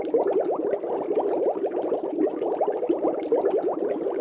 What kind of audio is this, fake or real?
real